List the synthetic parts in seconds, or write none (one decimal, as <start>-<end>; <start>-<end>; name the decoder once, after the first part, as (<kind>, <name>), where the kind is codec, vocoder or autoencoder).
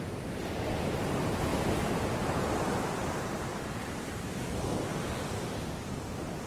3.5-4.4 (vocoder, BigVGAN v2); 4.9-5.4